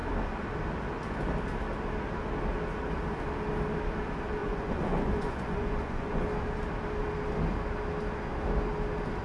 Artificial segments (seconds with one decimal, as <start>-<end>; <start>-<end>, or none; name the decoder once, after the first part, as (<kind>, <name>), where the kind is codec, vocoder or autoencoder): 4.4-6.2 (vocoder, Vocos)